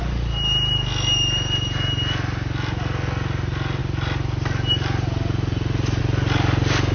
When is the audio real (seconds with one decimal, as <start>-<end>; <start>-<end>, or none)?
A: 0.0-6.9